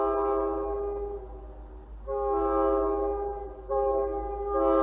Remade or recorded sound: recorded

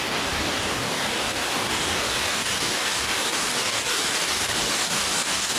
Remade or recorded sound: remade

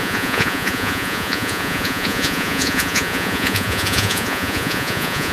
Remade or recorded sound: remade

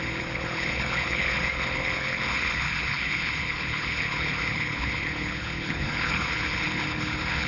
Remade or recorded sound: remade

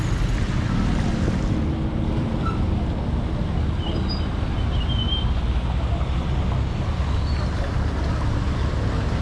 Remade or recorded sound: recorded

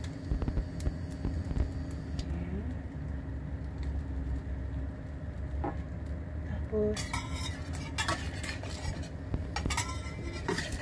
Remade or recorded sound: recorded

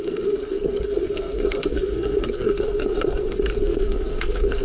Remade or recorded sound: remade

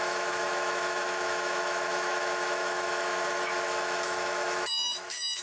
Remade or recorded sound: remade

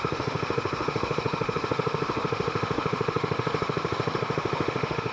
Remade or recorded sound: remade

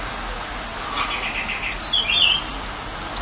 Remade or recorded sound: recorded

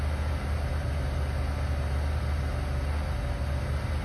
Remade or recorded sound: recorded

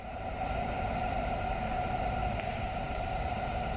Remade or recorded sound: remade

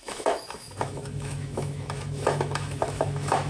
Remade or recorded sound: remade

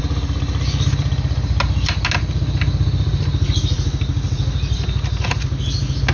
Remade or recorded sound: recorded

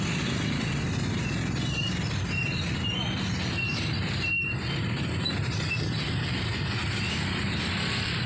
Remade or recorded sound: remade